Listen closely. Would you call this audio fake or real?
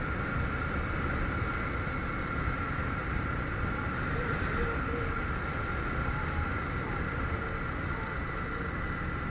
real